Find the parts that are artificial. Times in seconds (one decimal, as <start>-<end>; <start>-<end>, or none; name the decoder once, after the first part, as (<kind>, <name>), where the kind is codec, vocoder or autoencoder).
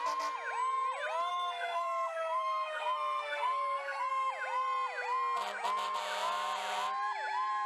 1.3-4.1 (codec, SNAC)